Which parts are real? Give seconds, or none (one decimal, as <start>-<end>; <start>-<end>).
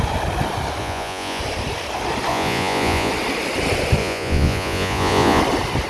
0.0-0.8; 1.4-2.3; 3.1-4.0; 5.4-5.9